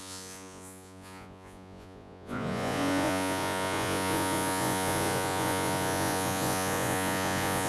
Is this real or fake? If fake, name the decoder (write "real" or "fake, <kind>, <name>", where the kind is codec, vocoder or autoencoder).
fake, vocoder, Vocos